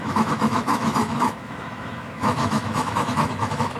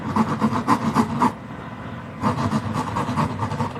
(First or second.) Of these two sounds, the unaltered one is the second